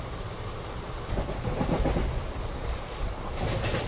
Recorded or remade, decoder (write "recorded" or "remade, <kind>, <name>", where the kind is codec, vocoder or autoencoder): remade, vocoder, BigVGAN v2